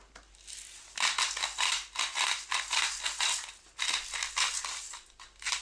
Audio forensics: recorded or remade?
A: recorded